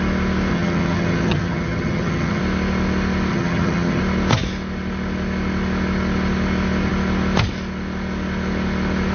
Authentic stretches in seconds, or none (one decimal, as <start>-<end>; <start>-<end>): 0.0-0.5; 2.4-3.3; 4.0-9.1